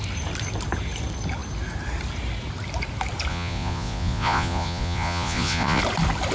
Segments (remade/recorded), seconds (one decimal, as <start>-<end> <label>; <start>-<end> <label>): 0.0-3.3 recorded; 3.3-5.8 remade; 5.8-6.3 recorded